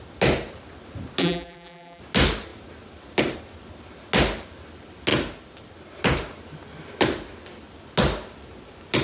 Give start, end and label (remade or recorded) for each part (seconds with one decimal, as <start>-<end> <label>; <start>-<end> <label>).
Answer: 0.0-1.2 recorded; 1.2-2.0 remade; 2.0-9.0 recorded